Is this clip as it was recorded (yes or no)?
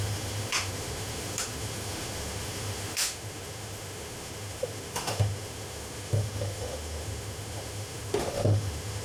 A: no